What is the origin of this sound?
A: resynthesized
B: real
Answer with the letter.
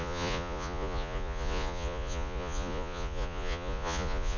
A